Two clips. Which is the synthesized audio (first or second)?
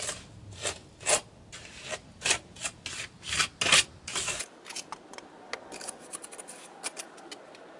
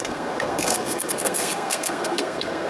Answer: second